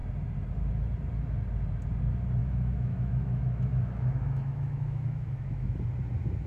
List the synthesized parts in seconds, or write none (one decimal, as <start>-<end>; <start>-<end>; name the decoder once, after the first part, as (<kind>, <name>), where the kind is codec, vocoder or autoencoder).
2.4-5.8 (autoencoder, DAC-VAE)